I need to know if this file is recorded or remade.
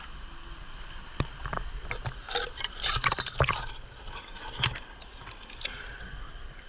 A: recorded